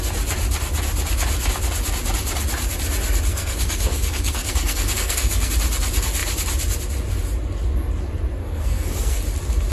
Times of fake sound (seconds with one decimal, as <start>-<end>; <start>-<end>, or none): 3.3-5.5; 8.4-9.2